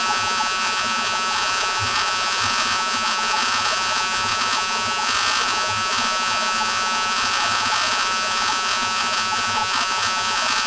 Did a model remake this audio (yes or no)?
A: yes